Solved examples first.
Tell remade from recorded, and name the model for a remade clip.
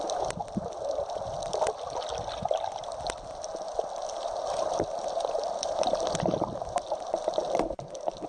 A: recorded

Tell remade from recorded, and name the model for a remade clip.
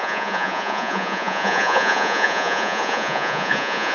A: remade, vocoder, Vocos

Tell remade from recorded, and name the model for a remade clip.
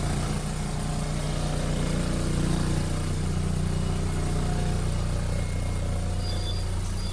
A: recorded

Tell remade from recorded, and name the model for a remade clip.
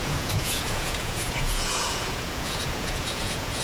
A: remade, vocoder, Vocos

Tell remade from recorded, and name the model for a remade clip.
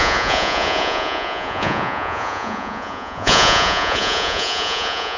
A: remade, vocoder, Vocos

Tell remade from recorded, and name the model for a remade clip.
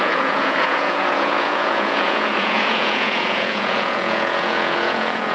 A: remade, vocoder, Vocos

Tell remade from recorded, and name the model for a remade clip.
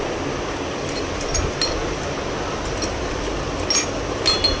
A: recorded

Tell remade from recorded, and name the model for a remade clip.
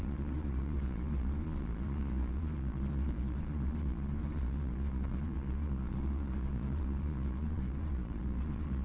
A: remade, vocoder, Vocos